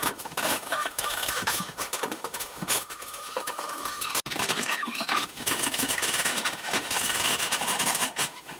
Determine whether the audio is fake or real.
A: fake